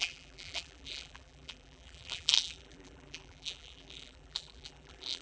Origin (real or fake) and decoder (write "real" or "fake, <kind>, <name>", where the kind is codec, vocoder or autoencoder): fake, vocoder, BigVGAN v2